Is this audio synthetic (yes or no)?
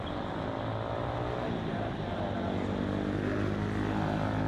no